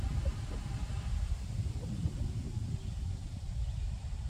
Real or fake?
real